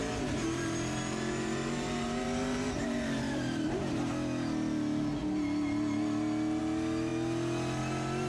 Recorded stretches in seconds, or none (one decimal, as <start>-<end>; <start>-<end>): 4.0-8.3